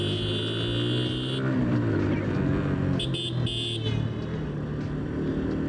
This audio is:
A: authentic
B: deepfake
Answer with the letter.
A